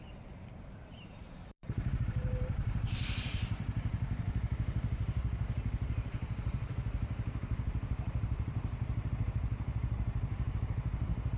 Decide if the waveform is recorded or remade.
remade